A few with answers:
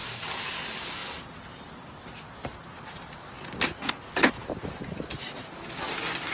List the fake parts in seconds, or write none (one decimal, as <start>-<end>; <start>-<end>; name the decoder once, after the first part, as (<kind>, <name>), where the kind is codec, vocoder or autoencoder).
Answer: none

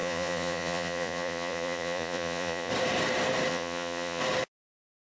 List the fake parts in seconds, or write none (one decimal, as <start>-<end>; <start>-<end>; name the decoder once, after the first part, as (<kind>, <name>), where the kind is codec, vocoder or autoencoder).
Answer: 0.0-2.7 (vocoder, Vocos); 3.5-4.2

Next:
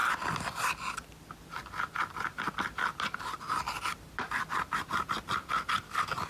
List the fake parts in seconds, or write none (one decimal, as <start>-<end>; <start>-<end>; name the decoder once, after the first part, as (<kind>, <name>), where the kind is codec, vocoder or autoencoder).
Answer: none

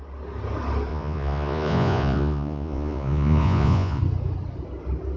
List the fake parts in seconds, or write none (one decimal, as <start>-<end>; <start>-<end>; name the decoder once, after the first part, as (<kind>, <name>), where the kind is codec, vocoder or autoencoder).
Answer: 0.9-4.0 (vocoder, Vocos)

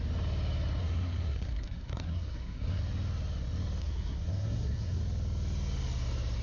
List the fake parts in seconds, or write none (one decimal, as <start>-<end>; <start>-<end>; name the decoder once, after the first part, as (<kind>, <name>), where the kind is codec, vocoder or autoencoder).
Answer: 0.8-2.8 (codec, SNAC); 3.8-5.0

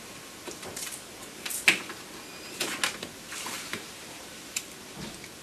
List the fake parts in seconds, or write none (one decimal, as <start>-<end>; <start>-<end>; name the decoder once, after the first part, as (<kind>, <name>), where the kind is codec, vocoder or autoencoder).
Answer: 3.7-4.6 (vocoder, BigVGAN v2)

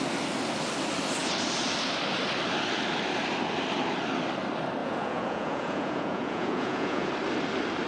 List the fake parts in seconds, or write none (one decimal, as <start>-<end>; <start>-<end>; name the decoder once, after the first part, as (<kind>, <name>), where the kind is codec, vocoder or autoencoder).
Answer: 4.8-7.1 (vocoder, Vocos)

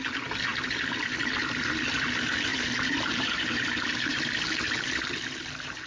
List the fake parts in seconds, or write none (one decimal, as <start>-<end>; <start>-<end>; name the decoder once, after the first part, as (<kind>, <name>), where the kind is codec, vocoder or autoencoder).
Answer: 2.5-4.2 (vocoder, BigVGAN v2)